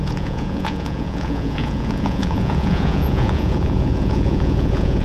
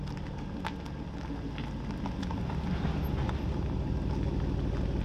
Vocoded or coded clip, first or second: first